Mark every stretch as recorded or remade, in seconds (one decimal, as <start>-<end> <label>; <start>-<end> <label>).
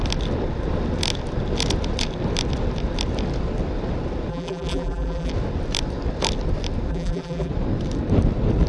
0.0-4.3 recorded; 4.3-5.3 remade; 5.3-6.9 recorded; 6.9-7.5 remade; 7.5-8.7 recorded